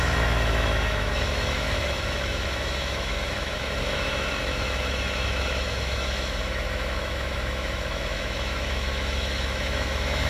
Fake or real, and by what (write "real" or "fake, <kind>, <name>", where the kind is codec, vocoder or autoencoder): fake, autoencoder, DAC-VAE